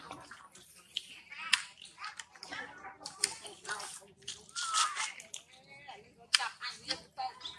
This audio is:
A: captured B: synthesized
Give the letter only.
A